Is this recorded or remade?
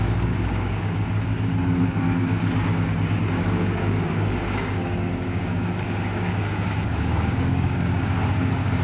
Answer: remade